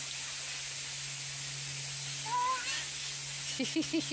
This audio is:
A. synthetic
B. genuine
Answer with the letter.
B